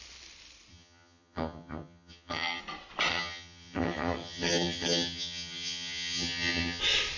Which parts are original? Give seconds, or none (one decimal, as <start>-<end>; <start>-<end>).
0.0-0.7; 2.6-3.1; 6.8-7.2